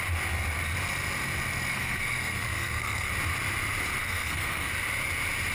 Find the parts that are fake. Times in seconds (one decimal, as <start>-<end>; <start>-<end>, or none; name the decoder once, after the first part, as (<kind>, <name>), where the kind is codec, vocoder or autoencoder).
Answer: 1.7-3.1 (codec, SNAC); 4.0-4.7